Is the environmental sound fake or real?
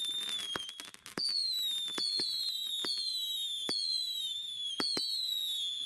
real